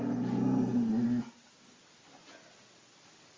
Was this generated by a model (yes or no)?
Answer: no